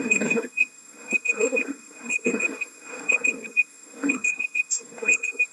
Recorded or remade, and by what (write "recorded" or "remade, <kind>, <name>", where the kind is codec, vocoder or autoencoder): remade, codec, SNAC